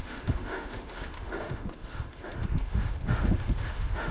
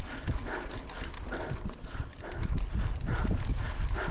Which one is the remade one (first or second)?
first